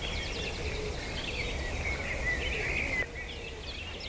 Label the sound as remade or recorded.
recorded